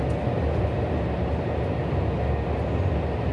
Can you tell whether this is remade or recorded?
recorded